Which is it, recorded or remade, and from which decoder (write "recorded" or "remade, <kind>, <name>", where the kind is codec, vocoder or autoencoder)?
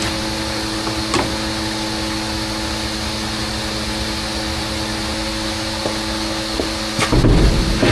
recorded